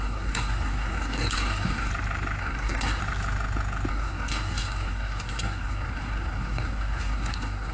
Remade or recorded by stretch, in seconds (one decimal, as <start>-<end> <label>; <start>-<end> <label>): 0.0-1.9 remade; 1.9-2.4 recorded; 2.4-3.0 remade; 3.0-3.9 recorded; 3.9-7.7 remade